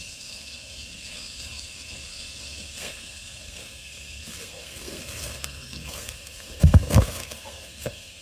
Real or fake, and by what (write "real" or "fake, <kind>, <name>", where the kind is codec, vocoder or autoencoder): fake, codec, SNAC